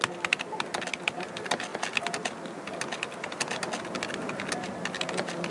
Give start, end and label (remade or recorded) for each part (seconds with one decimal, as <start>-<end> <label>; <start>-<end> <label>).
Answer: 0.0-5.5 recorded